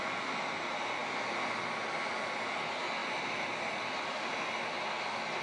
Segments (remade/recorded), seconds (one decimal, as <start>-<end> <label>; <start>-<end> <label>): 0.0-5.4 recorded